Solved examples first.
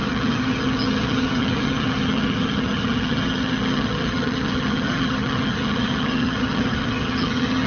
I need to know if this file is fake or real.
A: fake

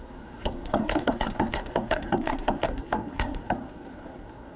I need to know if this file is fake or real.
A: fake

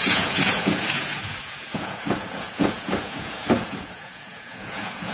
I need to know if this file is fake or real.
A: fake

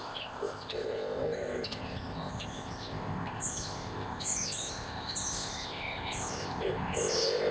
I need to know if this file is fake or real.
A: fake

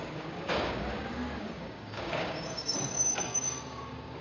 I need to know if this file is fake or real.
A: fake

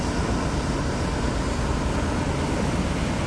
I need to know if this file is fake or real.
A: real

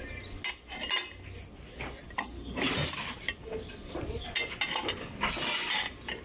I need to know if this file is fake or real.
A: real